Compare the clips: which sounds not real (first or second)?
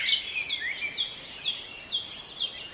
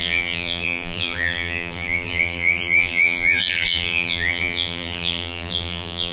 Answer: second